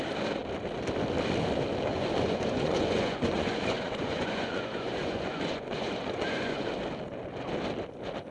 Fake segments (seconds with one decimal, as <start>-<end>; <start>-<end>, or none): 1.9-6.7

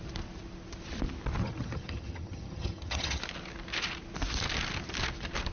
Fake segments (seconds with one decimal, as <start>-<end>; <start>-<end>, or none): 1.4-3.2